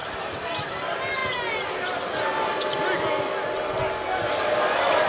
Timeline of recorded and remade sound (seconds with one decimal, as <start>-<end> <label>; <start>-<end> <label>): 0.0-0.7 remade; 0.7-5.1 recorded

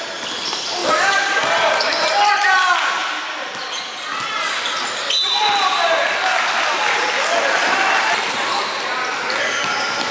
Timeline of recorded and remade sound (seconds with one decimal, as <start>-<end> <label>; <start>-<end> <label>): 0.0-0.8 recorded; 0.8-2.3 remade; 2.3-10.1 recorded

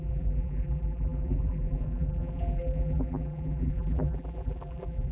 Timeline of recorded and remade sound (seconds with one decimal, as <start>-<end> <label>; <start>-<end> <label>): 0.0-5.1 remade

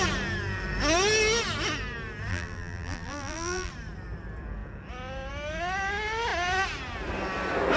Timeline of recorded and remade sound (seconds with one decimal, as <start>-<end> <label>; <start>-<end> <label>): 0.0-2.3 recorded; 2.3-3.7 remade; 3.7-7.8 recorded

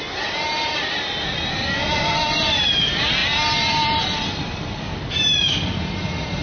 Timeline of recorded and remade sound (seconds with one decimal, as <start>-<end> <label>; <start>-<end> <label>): 0.0-3.2 remade; 3.2-5.1 recorded; 5.1-6.4 remade

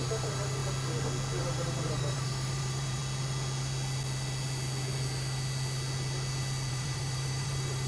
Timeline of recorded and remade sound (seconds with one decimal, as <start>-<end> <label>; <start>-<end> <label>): 0.0-0.6 remade; 0.6-1.4 recorded; 1.4-3.0 remade; 3.0-6.7 recorded; 6.7-7.9 remade